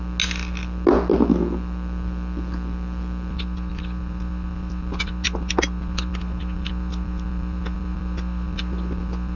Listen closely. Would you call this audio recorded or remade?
recorded